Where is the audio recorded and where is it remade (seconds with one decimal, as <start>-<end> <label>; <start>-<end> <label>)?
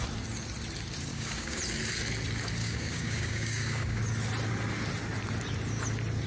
0.0-1.1 recorded; 1.1-1.6 remade; 1.6-2.6 recorded; 2.6-4.0 remade; 4.0-6.3 recorded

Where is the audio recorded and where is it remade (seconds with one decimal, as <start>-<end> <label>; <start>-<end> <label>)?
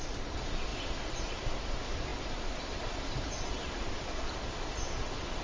0.0-5.4 recorded